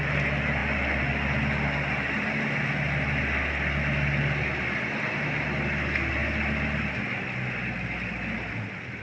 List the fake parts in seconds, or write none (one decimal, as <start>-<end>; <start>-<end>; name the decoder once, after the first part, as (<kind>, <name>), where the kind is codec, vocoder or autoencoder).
none